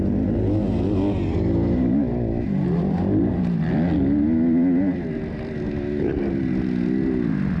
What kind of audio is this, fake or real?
real